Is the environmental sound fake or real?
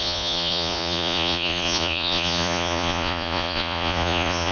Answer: fake